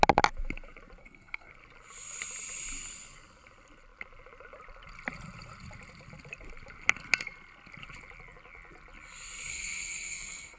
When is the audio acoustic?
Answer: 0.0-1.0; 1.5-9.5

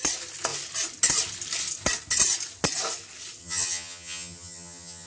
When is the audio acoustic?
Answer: 0.0-3.4

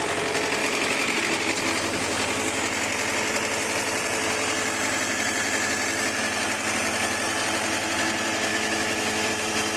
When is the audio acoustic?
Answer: 0.0-0.6; 1.2-8.5; 9.3-9.8

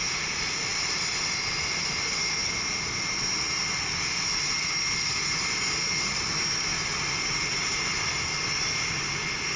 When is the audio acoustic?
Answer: 0.0-6.7; 8.4-9.6

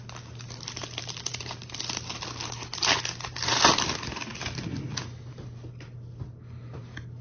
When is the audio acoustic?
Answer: 0.0-7.2

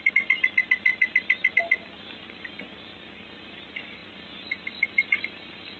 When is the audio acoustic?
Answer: 0.0-5.8